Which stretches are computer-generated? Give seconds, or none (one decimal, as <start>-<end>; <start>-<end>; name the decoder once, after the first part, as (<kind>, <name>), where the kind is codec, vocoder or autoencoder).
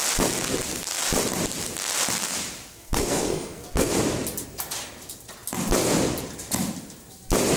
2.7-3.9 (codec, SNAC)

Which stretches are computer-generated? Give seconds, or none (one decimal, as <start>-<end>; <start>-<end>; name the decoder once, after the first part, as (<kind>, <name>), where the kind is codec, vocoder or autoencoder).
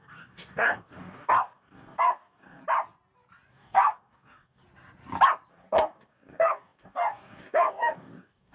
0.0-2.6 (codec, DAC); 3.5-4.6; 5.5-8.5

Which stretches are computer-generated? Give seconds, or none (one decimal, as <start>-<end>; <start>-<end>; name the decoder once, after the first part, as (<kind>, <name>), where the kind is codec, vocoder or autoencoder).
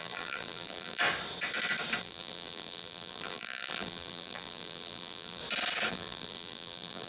0.0-1.0 (vocoder, BigVGAN v2); 2.0-5.4; 5.9-7.1